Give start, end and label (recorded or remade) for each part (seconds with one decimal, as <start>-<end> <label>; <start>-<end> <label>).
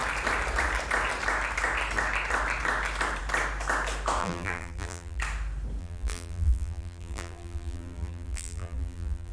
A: 0.0-4.2 recorded; 4.2-5.2 remade; 5.2-5.8 recorded; 5.8-9.3 remade